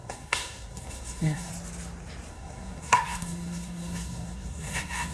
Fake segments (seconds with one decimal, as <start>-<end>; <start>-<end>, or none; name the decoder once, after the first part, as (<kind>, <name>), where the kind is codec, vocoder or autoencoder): 0.0-1.5 (codec, SNAC); 2.3-5.1